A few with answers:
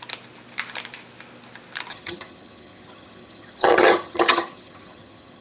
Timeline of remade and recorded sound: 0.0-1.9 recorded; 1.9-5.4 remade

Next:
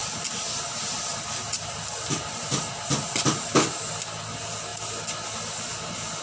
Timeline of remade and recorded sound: 0.0-6.2 recorded

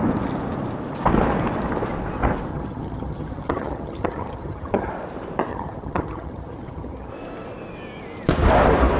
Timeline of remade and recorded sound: 0.0-2.5 recorded; 2.5-4.9 remade; 4.9-5.5 recorded; 5.5-7.1 remade; 7.1-9.0 recorded

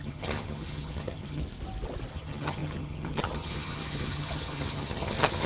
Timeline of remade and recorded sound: 0.0-1.4 remade; 1.4-2.1 recorded; 2.1-5.5 remade

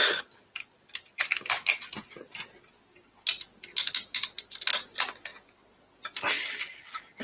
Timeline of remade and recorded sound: 0.0-7.2 recorded

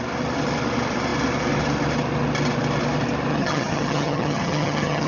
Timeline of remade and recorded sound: 0.0-3.3 recorded; 3.3-5.1 remade